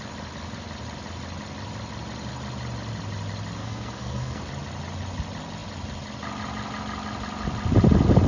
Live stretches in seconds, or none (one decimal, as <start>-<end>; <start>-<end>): 0.0-3.6; 4.4-8.3